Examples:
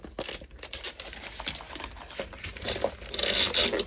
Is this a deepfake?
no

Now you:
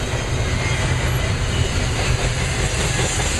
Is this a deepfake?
no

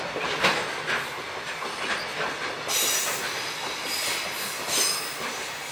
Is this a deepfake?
no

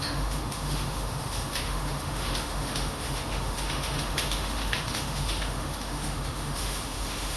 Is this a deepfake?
yes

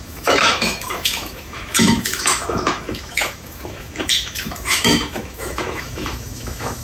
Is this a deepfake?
yes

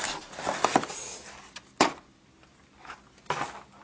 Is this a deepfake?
no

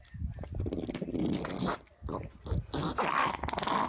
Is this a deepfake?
no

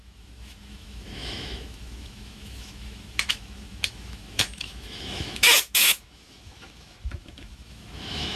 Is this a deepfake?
yes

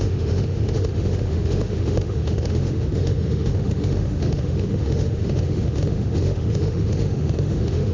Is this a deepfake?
yes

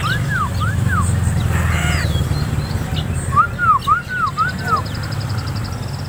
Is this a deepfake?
no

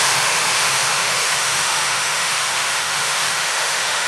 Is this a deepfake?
yes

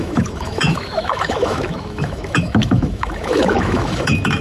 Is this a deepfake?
yes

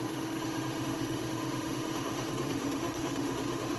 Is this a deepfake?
yes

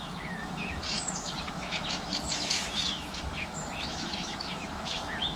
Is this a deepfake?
yes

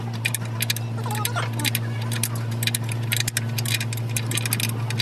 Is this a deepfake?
no